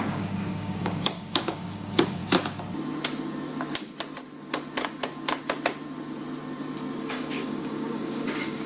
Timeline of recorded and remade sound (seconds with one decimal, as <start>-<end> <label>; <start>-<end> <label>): 0.0-2.2 remade; 2.2-7.0 recorded; 7.0-8.7 remade